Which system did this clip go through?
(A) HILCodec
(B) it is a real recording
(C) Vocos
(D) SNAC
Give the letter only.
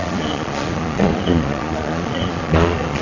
C